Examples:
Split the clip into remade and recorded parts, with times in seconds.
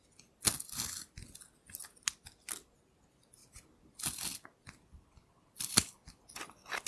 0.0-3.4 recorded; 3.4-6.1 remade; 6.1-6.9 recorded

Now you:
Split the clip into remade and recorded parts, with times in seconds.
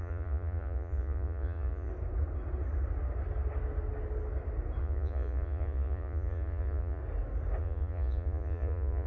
0.0-1.9 remade; 1.9-4.8 recorded; 4.8-7.0 remade; 7.0-7.6 recorded; 7.6-9.1 remade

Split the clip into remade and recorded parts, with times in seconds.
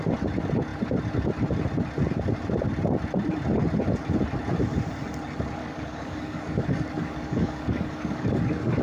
0.0-5.6 recorded; 5.6-8.8 remade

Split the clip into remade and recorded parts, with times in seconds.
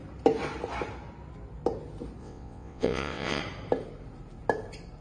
0.0-2.2 recorded; 2.2-3.4 remade; 3.4-5.0 recorded